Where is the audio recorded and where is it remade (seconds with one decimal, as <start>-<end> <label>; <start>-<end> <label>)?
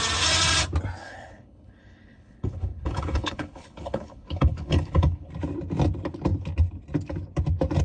0.0-1.0 recorded; 1.0-5.3 remade; 5.3-7.8 recorded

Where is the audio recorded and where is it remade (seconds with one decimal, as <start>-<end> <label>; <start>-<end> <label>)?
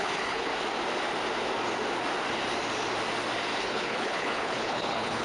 0.0-0.5 remade; 0.5-3.6 recorded; 3.6-5.2 remade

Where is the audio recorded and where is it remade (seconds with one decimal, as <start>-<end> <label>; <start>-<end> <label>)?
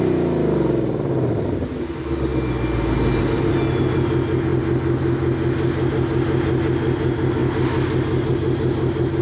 0.0-9.2 recorded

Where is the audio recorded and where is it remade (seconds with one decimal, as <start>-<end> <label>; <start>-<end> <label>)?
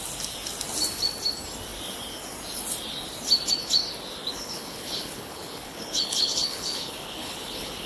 0.0-4.3 recorded; 4.3-7.9 remade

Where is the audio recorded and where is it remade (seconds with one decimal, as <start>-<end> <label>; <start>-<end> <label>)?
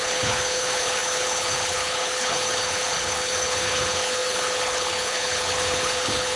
0.0-6.4 remade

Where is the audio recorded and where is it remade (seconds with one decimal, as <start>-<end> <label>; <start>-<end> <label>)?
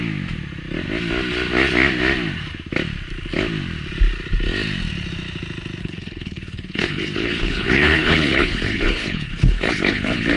0.0-5.8 recorded; 5.8-10.4 remade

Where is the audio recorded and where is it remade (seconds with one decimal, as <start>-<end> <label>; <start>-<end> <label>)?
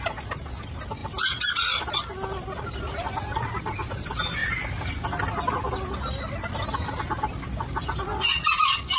0.0-9.0 recorded